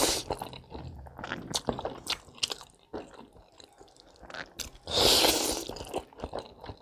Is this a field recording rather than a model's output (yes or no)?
yes